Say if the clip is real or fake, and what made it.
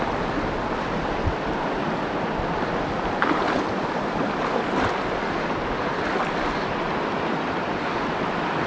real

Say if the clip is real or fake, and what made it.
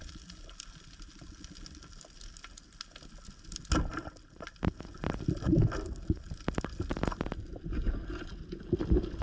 real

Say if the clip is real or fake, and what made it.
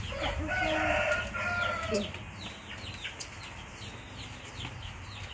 real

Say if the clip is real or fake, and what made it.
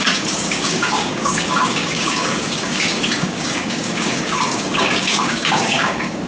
fake, codec, DAC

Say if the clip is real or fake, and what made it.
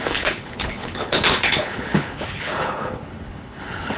fake, codec, HILCodec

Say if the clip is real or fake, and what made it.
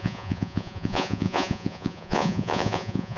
fake, vocoder, Vocos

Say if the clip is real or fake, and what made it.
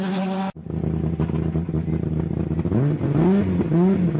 real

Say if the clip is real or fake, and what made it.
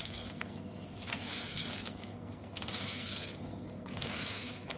fake, codec, SNAC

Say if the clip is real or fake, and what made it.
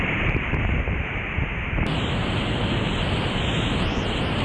fake, vocoder, BigVGAN v2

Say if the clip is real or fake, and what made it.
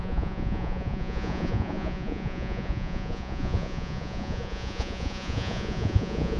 fake, vocoder, Vocos